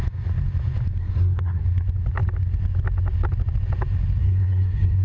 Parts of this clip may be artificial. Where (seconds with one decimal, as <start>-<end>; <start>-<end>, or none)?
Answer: 1.0-1.6; 4.2-5.0